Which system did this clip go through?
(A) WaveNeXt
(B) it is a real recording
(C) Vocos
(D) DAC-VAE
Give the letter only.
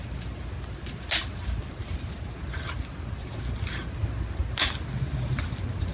B